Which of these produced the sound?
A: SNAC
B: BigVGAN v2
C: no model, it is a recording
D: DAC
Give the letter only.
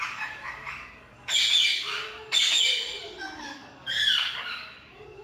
D